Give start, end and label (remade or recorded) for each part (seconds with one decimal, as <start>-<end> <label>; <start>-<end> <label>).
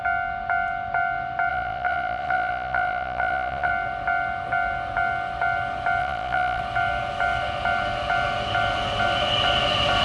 0.0-1.5 recorded; 1.5-3.7 remade; 3.7-6.0 recorded; 6.0-6.6 remade; 6.6-10.0 recorded